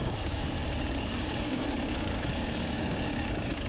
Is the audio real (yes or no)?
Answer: no